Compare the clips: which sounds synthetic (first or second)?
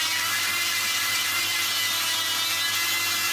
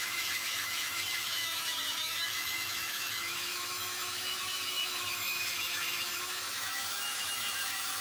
second